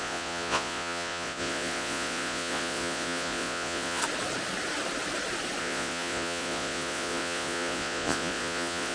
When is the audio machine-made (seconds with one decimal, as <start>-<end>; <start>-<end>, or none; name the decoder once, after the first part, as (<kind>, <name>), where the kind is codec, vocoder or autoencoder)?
0.0-4.0 (vocoder, Vocos); 5.6-8.9